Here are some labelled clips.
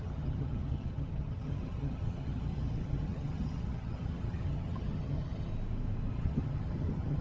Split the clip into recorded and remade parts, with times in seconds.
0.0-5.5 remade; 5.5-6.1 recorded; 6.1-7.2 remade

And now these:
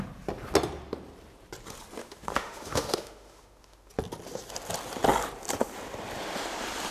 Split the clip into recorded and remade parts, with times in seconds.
0.0-2.0 recorded; 2.0-3.9 remade; 3.9-6.9 recorded